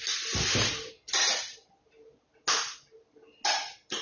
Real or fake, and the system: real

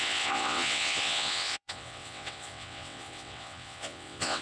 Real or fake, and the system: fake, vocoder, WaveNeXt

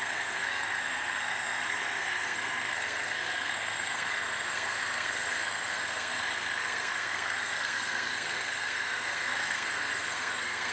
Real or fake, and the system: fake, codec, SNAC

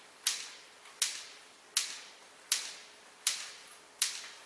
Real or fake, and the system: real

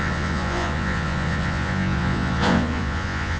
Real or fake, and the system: fake, vocoder, Vocos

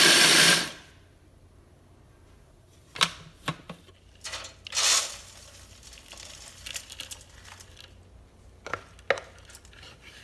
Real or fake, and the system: real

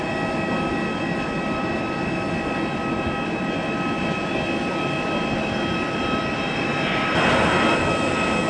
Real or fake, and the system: real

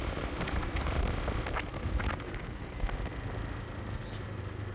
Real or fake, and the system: real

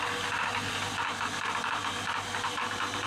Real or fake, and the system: real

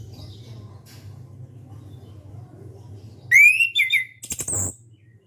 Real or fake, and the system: real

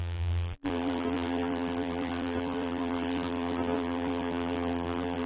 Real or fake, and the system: fake, vocoder, BigVGAN v2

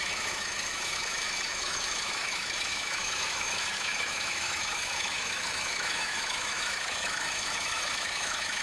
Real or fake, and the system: fake, autoencoder, DAC-VAE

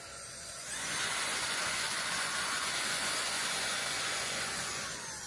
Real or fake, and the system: fake, vocoder, Vocos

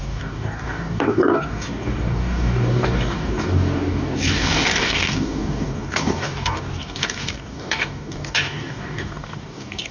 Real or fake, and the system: fake, codec, DAC